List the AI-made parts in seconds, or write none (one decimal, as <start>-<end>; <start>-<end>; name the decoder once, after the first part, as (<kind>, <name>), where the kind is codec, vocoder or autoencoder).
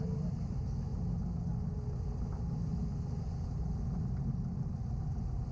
none